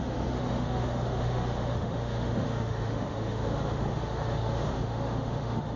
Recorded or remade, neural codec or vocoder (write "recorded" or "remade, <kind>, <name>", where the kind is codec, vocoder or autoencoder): remade, autoencoder, DAC-VAE